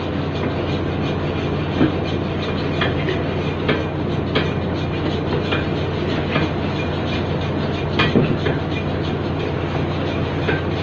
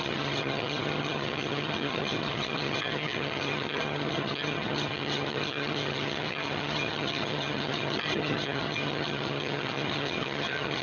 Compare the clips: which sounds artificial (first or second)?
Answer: second